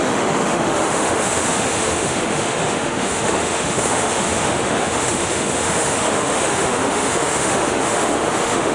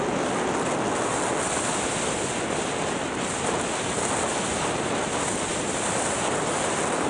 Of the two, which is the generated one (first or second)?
first